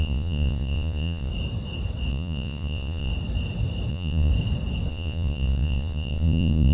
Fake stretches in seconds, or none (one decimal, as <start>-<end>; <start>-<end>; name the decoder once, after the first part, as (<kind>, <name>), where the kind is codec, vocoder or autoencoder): 0.0-1.3 (vocoder, Vocos); 2.1-3.1; 3.9-4.3; 4.9-6.7